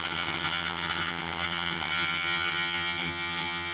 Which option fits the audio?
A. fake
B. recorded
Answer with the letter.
A